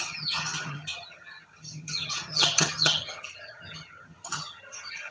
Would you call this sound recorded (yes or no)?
no